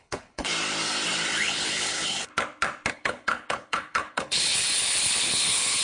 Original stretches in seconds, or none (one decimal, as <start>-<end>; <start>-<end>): 0.5-1.4; 2.3-2.9